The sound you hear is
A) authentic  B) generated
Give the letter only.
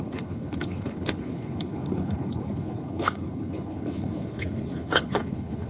B